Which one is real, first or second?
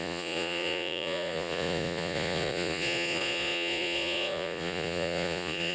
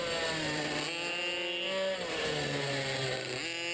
second